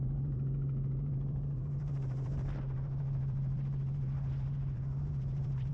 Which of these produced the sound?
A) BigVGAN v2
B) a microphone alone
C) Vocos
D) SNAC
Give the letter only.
A